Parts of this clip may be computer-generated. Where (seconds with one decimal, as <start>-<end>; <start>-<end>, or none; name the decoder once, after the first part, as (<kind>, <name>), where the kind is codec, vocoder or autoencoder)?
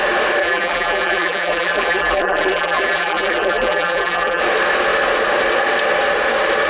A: 0.4-4.4 (vocoder, BigVGAN v2)